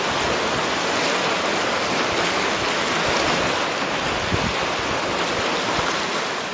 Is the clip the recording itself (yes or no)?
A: yes